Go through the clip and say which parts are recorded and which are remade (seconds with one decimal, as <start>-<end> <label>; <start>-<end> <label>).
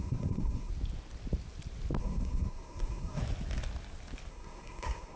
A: 0.0-0.7 remade; 0.7-2.0 recorded; 2.0-3.2 remade; 3.2-4.3 recorded; 4.3-5.2 remade